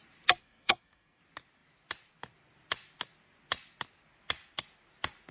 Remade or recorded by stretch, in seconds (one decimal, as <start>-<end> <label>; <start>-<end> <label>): 0.0-0.4 recorded; 0.4-1.2 remade; 1.2-5.3 recorded

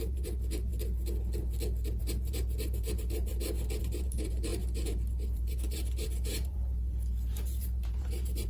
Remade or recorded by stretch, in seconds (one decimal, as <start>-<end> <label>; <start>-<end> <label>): 0.0-0.7 remade; 0.7-2.0 recorded; 2.0-3.3 remade; 3.3-3.8 recorded; 3.8-8.5 remade

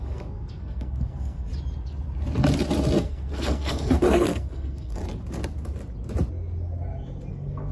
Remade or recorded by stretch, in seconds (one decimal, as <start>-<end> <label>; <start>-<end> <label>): 0.0-1.5 remade; 1.5-3.0 recorded; 3.0-5.0 remade; 5.0-7.3 recorded; 7.3-7.7 remade

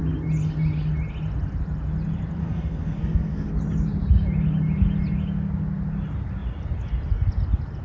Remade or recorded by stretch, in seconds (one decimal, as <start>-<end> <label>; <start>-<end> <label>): 0.0-2.4 recorded; 2.4-3.5 remade; 3.5-7.8 recorded

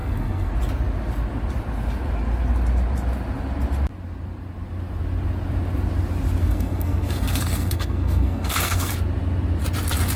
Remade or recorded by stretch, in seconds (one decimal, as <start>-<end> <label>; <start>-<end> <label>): 0.0-0.5 remade; 0.5-6.4 recorded; 6.4-8.9 remade; 8.9-10.2 recorded

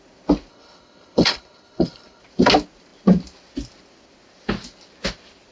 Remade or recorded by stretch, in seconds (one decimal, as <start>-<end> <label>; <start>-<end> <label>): 0.0-0.5 recorded; 0.5-2.2 remade; 2.2-5.5 recorded

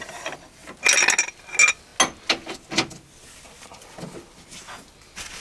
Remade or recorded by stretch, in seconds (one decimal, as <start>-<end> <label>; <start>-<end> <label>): 0.0-5.4 recorded

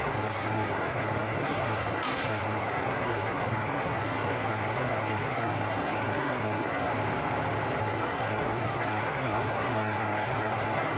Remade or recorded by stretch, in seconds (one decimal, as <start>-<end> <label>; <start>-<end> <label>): 0.0-6.9 remade; 6.9-7.8 recorded; 7.8-11.0 remade